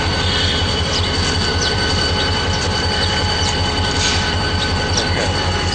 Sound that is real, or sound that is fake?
fake